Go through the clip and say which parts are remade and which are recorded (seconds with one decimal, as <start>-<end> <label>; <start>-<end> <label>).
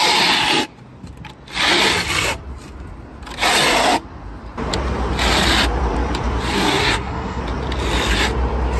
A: 0.0-6.5 recorded; 6.5-7.4 remade; 7.4-8.8 recorded